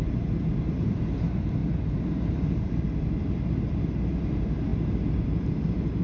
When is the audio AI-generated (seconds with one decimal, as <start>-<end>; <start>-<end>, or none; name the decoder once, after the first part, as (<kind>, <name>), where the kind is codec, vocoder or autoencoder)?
0.0-6.0 (vocoder, BigVGAN v2)